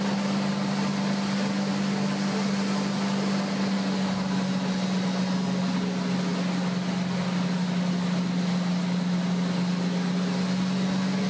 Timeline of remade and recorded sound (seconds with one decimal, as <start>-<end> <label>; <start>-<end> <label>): 0.0-11.3 recorded